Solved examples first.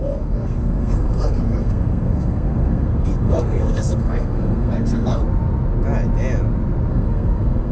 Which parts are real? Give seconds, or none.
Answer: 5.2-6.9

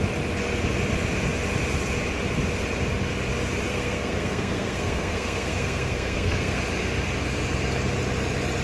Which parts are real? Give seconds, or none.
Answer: 0.0-3.7; 6.6-8.6

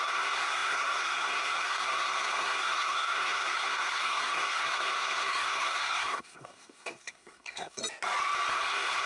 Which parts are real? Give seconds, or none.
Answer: 7.8-8.5

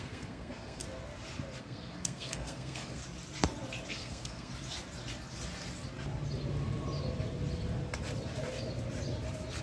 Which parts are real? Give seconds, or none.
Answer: 0.8-1.6; 3.0-3.9; 4.5-9.6

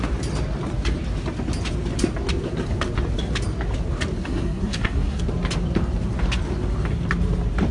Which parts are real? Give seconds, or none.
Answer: 0.0-4.2; 5.2-7.7

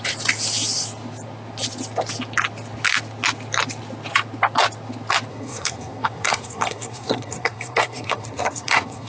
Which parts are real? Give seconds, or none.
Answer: 0.0-5.3

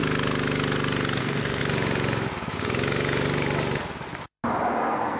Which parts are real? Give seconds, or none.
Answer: 0.0-1.2; 1.6-4.7

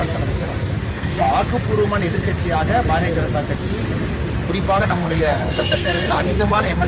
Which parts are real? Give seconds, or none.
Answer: 0.0-0.9; 1.3-4.8